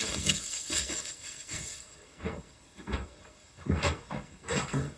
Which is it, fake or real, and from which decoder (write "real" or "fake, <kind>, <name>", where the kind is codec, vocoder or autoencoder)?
fake, codec, SNAC